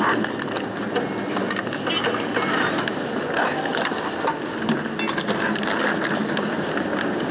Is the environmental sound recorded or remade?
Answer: recorded